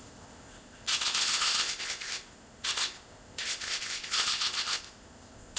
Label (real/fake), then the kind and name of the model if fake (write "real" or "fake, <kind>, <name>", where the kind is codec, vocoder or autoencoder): fake, codec, ZipCodec